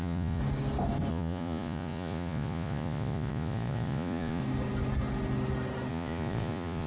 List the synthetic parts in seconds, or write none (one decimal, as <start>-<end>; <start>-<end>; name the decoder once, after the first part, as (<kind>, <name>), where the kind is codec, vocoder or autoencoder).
0.0-0.4 (vocoder, Vocos); 1.1-4.4; 5.9-6.9